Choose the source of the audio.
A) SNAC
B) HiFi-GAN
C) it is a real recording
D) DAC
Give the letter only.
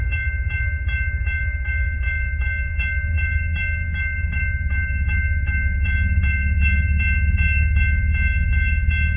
D